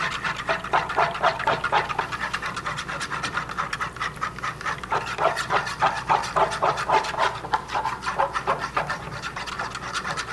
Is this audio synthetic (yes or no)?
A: no